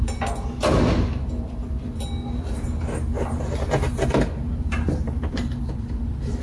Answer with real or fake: real